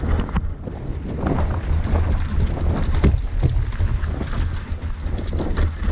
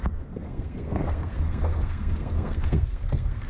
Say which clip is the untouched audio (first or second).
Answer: first